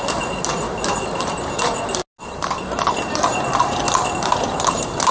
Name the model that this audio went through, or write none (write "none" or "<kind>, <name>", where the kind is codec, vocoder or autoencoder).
none